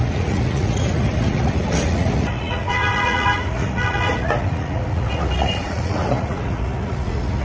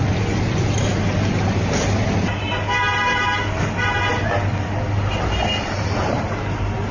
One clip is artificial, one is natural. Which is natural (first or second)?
second